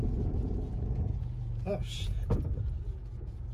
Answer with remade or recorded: remade